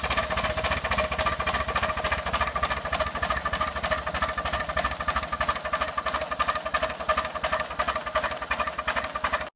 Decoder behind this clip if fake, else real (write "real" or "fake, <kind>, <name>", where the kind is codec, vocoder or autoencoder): real